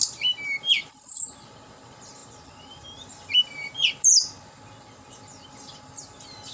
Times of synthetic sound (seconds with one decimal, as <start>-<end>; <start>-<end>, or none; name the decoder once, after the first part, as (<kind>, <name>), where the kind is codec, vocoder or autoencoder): none